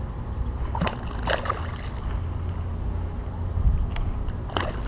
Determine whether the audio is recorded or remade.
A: recorded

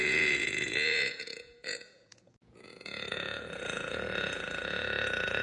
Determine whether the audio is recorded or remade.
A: remade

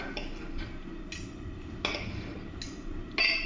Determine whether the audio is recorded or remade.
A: recorded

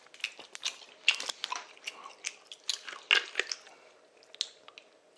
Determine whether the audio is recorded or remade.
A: recorded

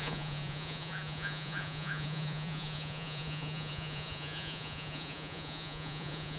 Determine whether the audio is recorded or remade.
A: remade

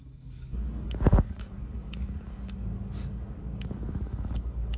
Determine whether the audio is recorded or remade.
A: remade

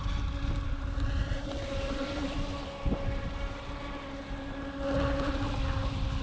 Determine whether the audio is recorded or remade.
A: recorded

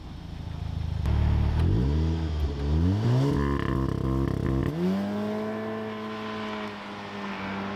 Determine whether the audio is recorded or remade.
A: recorded